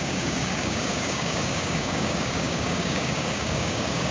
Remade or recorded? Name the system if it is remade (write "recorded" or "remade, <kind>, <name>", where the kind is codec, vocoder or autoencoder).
remade, codec, DAC